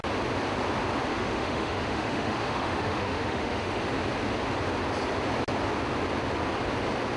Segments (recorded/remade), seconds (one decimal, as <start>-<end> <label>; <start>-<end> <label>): 0.0-1.1 recorded; 1.1-3.8 remade; 3.8-7.2 recorded